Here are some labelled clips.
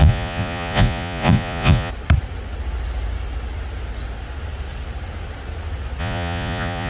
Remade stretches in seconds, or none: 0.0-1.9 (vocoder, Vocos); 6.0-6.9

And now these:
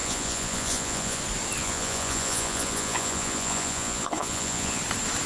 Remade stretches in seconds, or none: 0.0-1.2 (vocoder, Vocos); 1.6-4.8

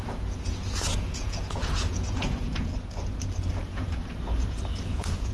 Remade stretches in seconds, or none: 0.0-2.7 (vocoder, Vocos); 3.5-5.3

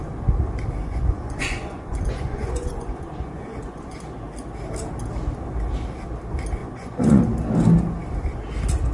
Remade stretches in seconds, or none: 0.8-4.0 (vocoder, Vocos); 6.6-7.2

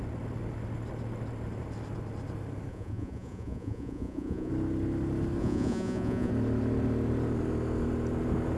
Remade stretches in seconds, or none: 2.7-4.5 (vocoder, Vocos); 5.4-6.3